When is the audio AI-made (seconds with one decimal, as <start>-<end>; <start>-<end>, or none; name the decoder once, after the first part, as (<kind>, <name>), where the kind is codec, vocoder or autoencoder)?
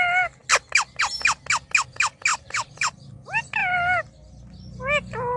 2.3-2.9 (vocoder, BigVGAN v2)